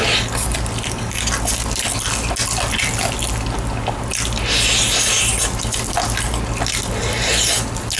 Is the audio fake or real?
real